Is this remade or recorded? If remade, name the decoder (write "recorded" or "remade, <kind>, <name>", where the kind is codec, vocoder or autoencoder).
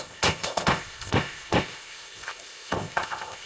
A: remade, codec, ZipCodec